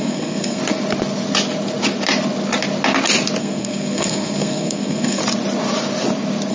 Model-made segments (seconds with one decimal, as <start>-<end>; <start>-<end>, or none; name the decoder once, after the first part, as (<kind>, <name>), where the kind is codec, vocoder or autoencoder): 0.0-0.6 (codec, SNAC); 3.4-5.2